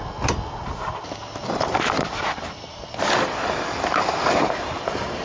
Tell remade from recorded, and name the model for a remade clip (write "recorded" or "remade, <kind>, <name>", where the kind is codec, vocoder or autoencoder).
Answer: recorded